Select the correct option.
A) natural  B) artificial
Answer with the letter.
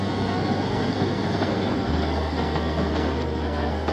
B